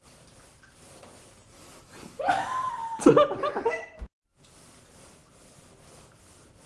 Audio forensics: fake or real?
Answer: real